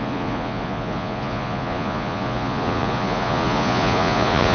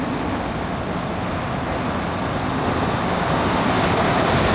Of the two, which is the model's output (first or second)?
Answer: first